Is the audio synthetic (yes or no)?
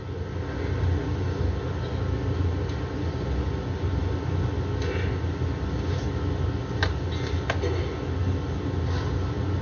no